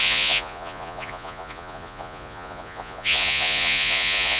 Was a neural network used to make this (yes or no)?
yes